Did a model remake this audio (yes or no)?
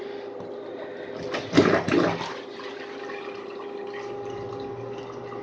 no